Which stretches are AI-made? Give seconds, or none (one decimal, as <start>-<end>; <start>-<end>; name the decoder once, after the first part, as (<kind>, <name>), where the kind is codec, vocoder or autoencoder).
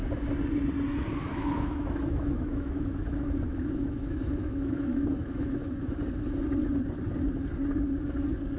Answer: 1.3-6.0 (autoencoder, DAC-VAE)